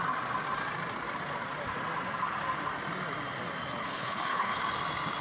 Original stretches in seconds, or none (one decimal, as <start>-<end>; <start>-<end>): 0.0-3.8; 4.6-5.2